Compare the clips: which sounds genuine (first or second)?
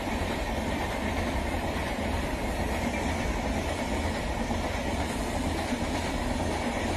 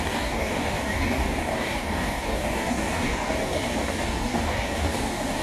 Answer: first